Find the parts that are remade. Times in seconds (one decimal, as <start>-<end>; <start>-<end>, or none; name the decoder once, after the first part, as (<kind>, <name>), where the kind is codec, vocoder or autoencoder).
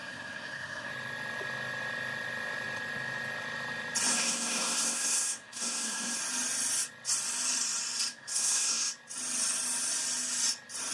0.0-0.9 (codec, SNAC); 4.1-6.2; 8.1-8.9